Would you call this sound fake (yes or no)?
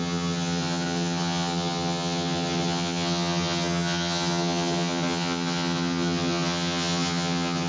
yes